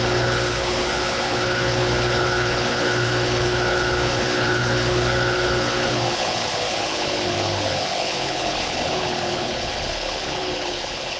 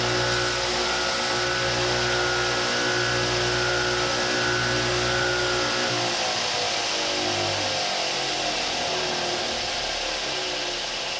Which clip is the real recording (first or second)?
second